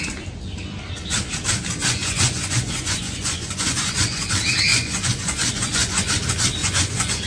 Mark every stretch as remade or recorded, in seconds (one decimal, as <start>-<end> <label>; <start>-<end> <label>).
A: 0.0-1.8 recorded; 1.8-4.3 remade; 4.3-4.7 recorded; 4.7-6.1 remade; 6.1-6.6 recorded; 6.6-7.3 remade